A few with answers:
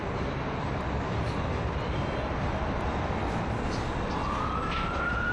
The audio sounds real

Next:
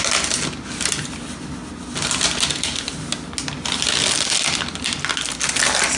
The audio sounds real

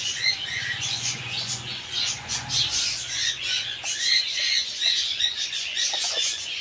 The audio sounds fake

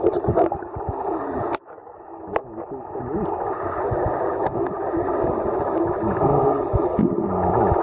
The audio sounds real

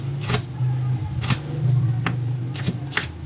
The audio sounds real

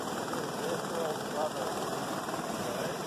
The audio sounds fake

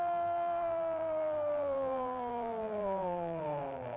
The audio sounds fake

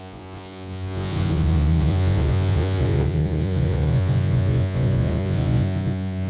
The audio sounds fake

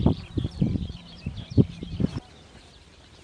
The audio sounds fake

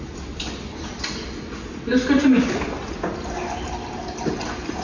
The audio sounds real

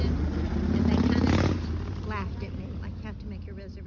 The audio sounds real